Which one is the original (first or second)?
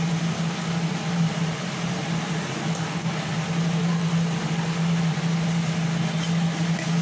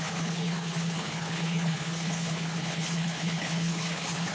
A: first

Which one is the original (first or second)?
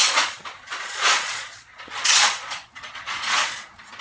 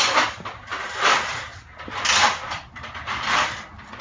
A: second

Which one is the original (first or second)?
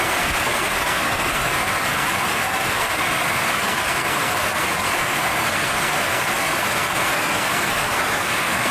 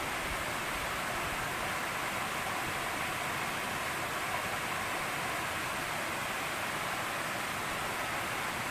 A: second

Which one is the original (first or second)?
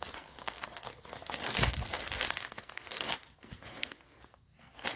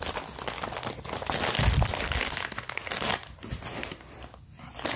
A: second